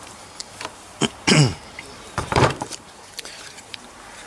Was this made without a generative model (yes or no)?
no